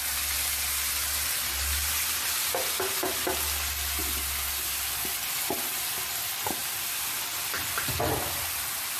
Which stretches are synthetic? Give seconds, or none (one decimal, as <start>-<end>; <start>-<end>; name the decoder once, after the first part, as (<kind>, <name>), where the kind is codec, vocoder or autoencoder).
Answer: none